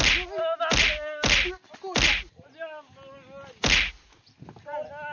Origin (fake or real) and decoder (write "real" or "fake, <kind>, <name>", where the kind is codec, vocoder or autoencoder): real